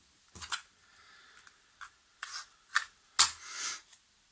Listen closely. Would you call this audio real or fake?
real